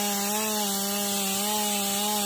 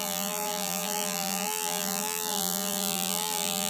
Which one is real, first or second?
first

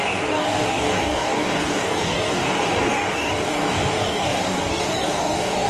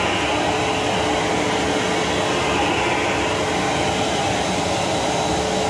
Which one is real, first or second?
second